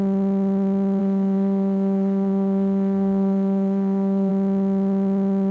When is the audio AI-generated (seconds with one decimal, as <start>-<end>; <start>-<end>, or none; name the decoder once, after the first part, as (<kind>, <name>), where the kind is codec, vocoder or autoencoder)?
1.0-4.3 (codec, SNAC)